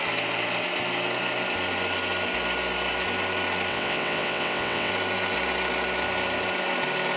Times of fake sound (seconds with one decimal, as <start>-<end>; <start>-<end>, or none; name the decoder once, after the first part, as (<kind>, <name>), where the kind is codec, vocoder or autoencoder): 3.7-4.9 (vocoder, WaveNeXt)